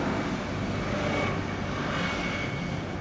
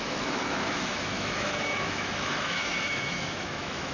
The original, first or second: first